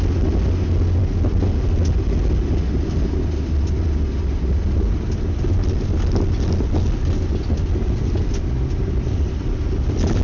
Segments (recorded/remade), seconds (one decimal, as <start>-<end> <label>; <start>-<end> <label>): 0.0-10.2 recorded